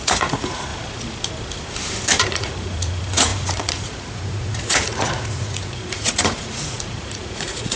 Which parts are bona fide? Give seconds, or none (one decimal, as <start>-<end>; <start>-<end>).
0.7-2.2